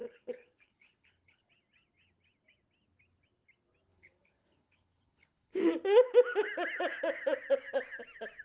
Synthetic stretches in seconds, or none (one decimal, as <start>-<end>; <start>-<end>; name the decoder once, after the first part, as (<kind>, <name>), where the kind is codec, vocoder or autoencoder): 0.0-1.5 (codec, HILCodec); 3.9-5.6